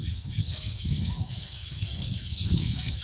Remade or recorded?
remade